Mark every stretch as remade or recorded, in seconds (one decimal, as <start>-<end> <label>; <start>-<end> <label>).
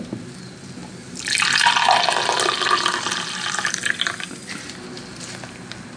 0.0-6.0 recorded